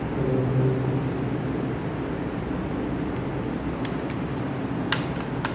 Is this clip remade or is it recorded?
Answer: recorded